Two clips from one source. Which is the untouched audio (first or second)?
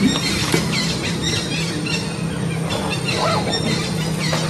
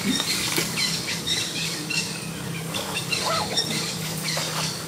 first